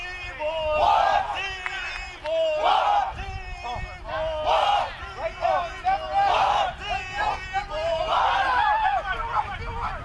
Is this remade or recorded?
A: recorded